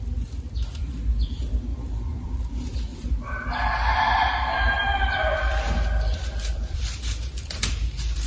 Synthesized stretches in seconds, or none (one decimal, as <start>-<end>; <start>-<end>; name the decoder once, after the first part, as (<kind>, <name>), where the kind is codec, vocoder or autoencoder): 1.7-2.5 (vocoder, BigVGAN v2); 2.9-7.6